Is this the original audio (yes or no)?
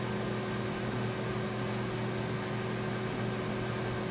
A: yes